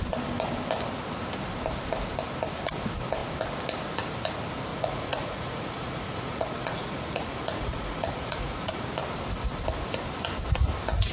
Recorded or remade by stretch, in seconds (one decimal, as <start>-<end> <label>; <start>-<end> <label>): 0.0-4.7 recorded; 4.7-8.8 remade; 8.8-11.1 recorded